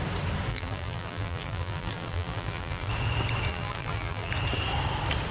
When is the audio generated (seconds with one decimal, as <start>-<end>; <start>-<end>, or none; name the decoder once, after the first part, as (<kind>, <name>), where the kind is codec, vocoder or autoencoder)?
0.5-2.9 (vocoder, BigVGAN v2); 3.5-4.3